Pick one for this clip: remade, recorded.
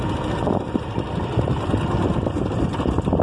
recorded